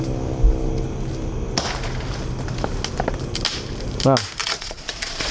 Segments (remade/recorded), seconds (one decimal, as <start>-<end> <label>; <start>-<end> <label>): 0.0-4.4 recorded; 4.4-5.3 remade